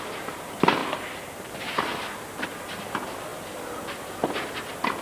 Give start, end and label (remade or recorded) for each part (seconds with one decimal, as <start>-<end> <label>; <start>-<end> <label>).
0.0-5.0 recorded